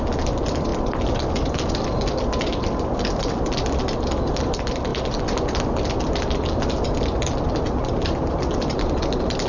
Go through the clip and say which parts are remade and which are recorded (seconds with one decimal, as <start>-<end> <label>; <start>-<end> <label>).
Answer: 0.0-9.5 recorded

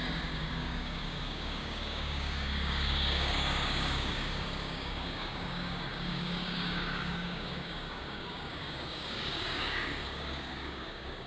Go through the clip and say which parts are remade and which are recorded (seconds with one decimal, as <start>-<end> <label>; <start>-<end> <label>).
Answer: 0.0-11.3 remade